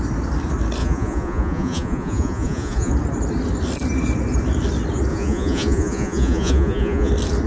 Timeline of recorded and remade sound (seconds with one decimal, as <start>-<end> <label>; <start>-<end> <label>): 0.0-0.8 recorded; 0.8-2.9 remade; 2.9-5.1 recorded; 5.1-7.1 remade; 7.1-7.5 recorded